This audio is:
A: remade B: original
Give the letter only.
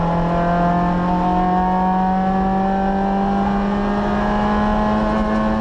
B